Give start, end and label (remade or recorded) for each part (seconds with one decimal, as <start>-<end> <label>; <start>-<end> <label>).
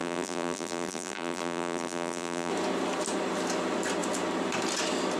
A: 0.0-2.5 remade; 2.5-5.2 recorded